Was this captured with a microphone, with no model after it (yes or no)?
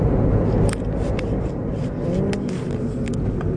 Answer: yes